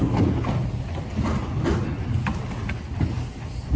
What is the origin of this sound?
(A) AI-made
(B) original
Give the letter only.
B